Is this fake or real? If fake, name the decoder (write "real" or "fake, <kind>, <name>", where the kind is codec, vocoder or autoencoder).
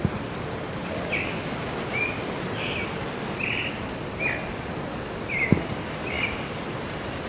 real